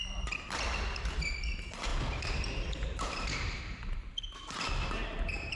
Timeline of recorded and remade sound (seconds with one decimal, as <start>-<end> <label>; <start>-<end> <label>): 0.0-1.9 recorded; 1.9-4.7 remade; 4.7-5.6 recorded